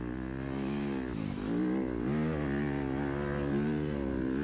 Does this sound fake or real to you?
real